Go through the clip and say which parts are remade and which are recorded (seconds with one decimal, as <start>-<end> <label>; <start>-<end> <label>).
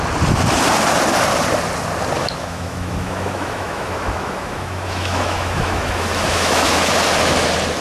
0.0-2.2 recorded; 2.2-6.9 remade; 6.9-7.8 recorded